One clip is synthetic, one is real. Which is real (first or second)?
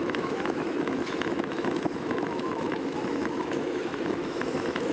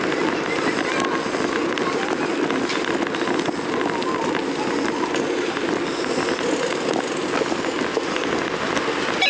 second